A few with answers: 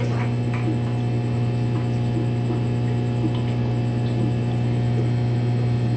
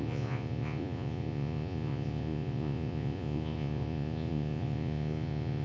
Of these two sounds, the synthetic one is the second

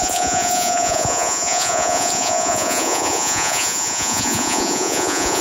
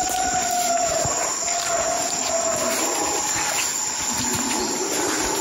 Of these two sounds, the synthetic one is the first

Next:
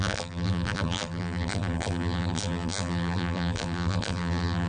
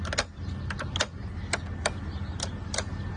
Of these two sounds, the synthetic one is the first